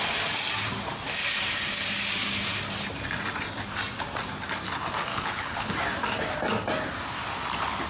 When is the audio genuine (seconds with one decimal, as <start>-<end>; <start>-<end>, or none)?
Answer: 0.0-5.1; 5.7-7.9